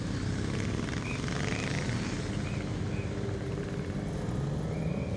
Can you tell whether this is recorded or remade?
recorded